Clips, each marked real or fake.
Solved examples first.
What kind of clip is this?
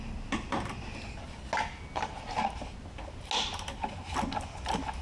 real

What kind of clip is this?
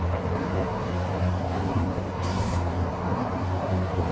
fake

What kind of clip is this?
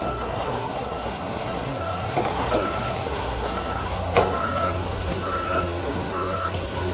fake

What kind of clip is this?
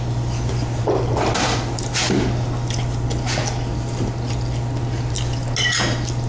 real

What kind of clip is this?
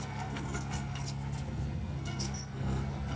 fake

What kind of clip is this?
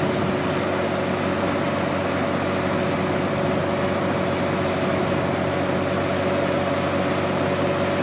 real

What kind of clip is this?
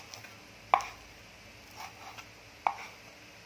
real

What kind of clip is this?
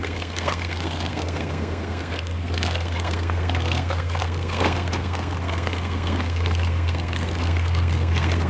fake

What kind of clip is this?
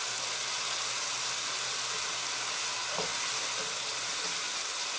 real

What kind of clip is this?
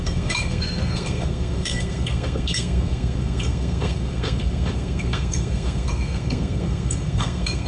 fake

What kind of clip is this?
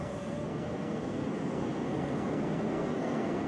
fake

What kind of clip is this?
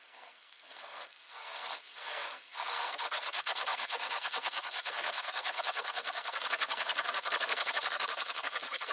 fake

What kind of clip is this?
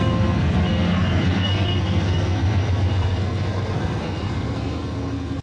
fake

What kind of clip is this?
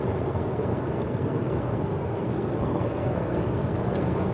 fake